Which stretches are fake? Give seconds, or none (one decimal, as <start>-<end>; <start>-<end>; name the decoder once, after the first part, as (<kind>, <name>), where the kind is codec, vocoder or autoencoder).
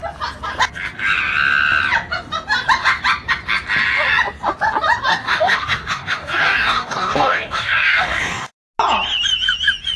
5.1-8.5 (codec, DAC)